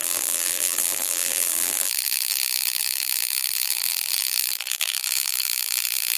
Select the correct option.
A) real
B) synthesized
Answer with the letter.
B